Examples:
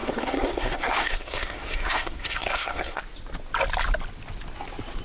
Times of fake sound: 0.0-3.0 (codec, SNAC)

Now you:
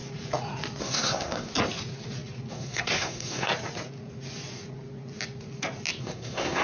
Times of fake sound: 0.8-1.5 (codec, SNAC); 2.5-3.5; 6.0-6.6

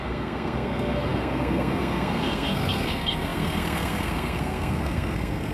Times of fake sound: 0.0-5.5 (codec, SNAC)

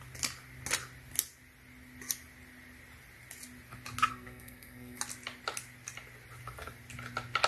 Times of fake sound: 4.1-5.0 (codec, SNAC)

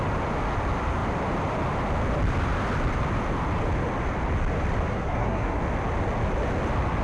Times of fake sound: 4.9-5.6 (codec, SNAC)

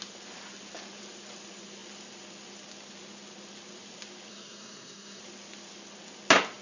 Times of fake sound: 4.3-5.2 (codec, SNAC)

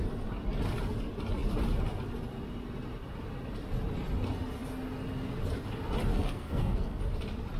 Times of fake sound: 6.1-7.0 (codec, SNAC)

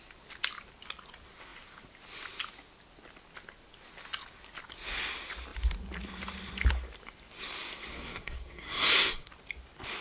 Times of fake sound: 7.9-9.3 (codec, SNAC)